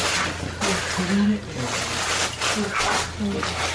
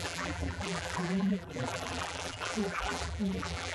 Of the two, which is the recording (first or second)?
first